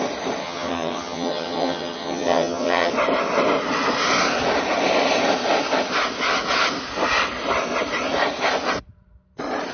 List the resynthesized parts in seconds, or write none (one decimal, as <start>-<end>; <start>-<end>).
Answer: 0.4-2.9